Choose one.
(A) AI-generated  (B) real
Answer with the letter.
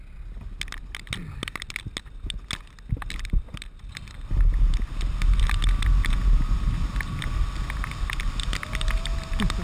B